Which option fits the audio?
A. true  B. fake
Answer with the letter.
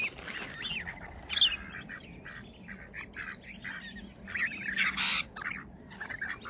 A